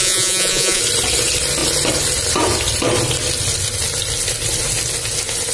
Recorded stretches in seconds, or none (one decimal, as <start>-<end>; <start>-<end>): 0.8-5.5

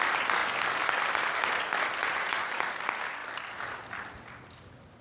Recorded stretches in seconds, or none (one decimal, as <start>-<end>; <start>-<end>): 0.0-2.0; 2.6-5.0

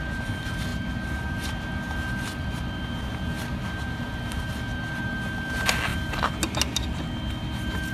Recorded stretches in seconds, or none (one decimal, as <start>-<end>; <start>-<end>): 0.0-7.9

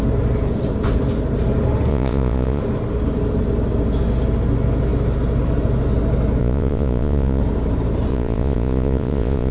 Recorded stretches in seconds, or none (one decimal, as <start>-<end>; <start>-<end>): 0.0-1.9; 2.6-6.4; 7.4-8.1